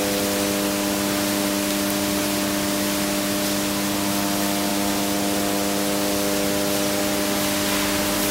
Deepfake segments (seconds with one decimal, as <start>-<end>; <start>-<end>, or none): none